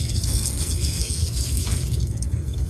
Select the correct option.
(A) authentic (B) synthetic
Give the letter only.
B